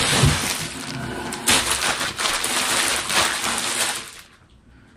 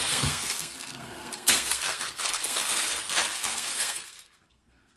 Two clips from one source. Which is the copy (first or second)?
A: second